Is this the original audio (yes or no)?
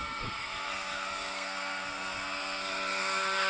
no